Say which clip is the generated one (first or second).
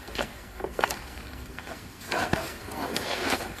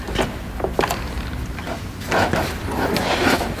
first